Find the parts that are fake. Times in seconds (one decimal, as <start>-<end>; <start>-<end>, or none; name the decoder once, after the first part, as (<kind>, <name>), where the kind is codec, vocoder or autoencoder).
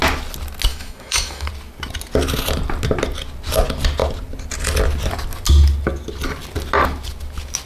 0.7-1.5 (autoencoder, DAC-VAE)